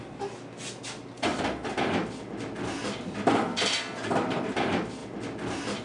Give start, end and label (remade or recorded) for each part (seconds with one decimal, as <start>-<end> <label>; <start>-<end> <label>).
0.0-5.8 recorded